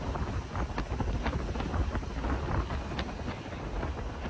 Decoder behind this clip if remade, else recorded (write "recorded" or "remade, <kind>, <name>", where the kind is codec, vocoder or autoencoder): recorded